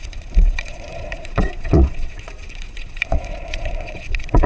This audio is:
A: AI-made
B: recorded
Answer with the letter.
A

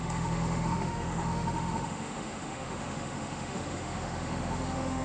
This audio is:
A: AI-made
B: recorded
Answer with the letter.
A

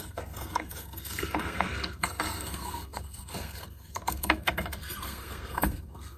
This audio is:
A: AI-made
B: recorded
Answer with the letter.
A